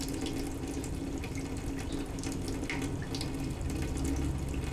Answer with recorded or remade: recorded